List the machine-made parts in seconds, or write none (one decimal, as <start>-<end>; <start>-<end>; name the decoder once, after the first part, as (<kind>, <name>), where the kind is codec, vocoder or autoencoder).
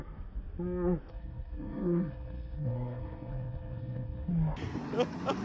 1.1-4.3 (codec, SNAC)